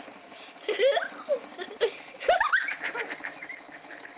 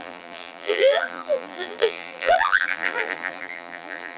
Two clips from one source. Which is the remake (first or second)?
second